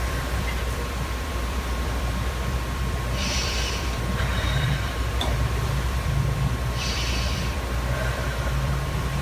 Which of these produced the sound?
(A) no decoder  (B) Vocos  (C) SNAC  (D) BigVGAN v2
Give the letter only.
D